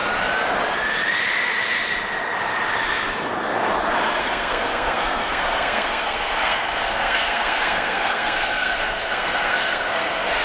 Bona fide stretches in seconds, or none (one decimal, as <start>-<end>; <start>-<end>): 0.0-4.2

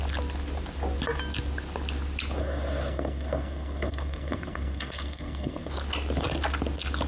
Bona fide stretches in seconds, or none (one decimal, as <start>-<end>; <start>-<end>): 0.0-2.4; 5.7-7.1

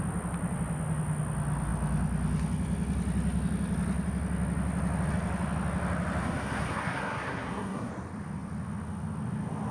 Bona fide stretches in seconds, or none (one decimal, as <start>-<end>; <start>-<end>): 0.0-6.2; 7.9-9.7

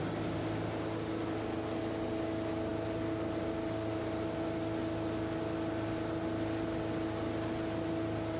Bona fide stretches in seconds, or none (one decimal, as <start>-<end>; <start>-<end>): 0.0-8.4

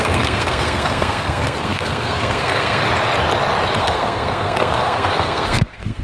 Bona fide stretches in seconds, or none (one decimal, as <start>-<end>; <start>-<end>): 2.8-3.8

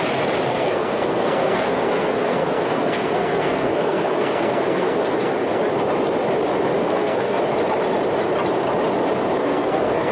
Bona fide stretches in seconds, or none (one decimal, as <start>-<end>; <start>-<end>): 0.0-0.5; 5.6-6.8; 7.4-9.4

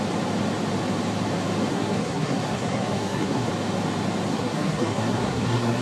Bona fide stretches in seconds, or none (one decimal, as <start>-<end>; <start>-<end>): 0.0-1.7; 3.5-4.3

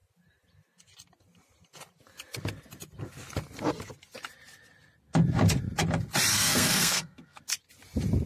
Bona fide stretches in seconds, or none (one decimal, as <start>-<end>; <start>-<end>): 0.0-6.3; 7.4-8.3